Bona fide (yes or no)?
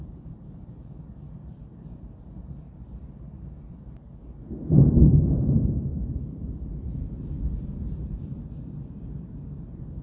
no